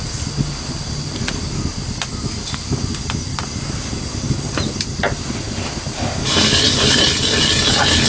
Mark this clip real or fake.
real